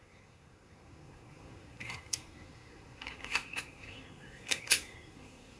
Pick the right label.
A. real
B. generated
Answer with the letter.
B